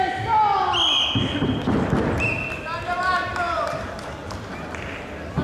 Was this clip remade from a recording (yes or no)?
no